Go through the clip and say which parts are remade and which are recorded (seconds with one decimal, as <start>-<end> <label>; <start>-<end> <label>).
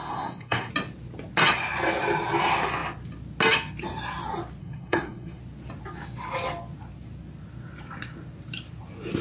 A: 0.0-0.7 remade; 0.7-4.6 recorded; 4.6-5.4 remade; 5.4-9.2 recorded